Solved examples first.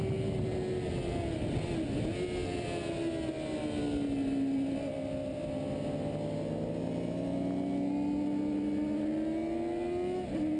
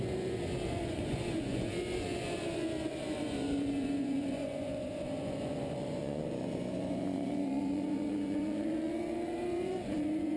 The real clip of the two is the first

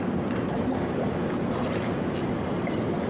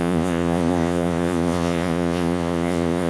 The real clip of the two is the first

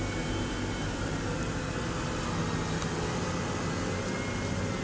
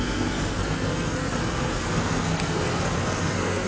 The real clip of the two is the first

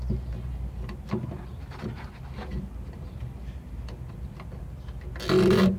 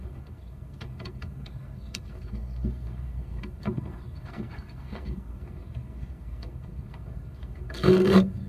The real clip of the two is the first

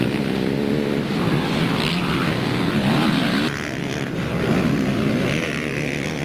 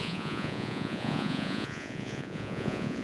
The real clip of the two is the first